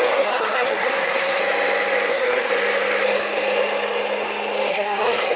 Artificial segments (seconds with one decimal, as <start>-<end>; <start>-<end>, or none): 0.0-1.4; 2.1-2.5; 4.7-5.4